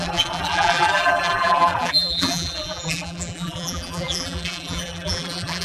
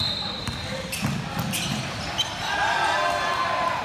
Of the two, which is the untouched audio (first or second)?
second